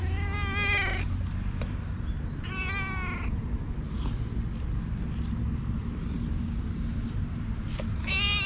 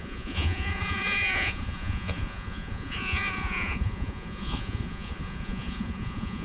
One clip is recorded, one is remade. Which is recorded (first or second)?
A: first